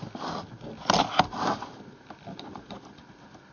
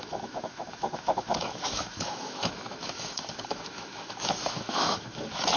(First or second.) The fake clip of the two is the second